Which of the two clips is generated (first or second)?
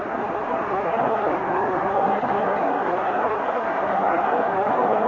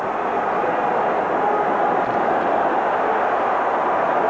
first